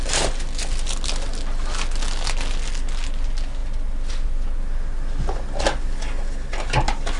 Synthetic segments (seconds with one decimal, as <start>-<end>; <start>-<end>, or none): none